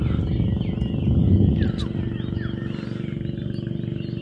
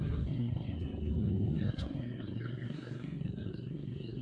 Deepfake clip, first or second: second